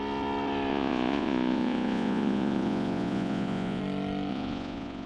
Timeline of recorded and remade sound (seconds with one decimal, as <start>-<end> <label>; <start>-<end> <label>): 0.0-0.7 recorded; 0.7-3.8 remade; 3.8-4.3 recorded; 4.3-5.1 remade